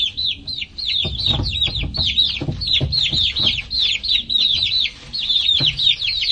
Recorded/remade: recorded